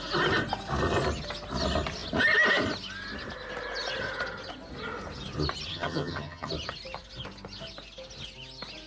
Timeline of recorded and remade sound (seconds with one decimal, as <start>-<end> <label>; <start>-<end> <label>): 0.0-5.7 recorded; 5.7-6.5 remade; 6.5-8.9 recorded